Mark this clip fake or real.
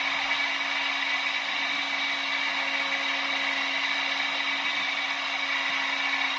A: real